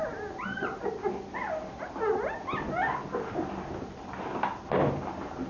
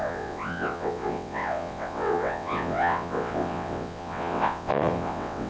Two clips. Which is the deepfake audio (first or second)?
second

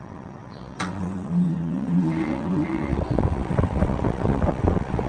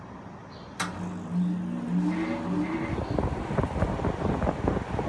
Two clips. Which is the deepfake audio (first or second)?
first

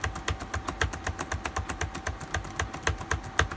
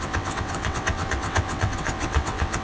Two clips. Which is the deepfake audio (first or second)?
second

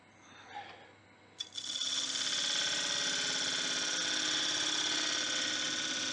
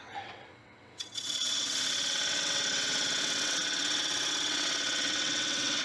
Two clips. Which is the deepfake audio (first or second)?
second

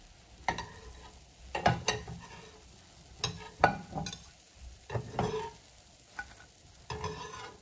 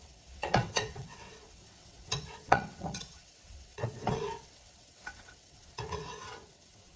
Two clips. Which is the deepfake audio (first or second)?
second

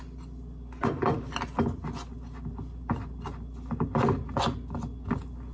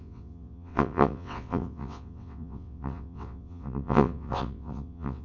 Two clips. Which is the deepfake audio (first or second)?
second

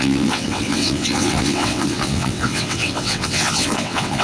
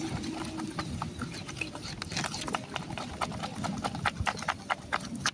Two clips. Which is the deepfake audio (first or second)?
first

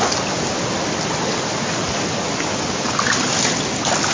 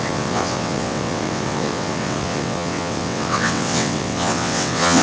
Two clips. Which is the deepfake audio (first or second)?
second